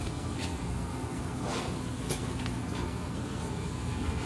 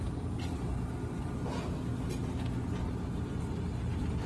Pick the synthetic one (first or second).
first